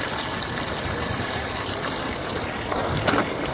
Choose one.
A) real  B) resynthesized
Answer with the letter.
B